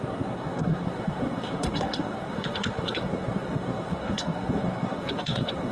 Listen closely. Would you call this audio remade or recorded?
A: remade